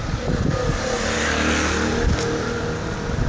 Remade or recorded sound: recorded